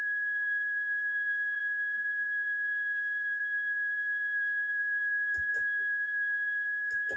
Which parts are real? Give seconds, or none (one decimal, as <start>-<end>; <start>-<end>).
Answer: none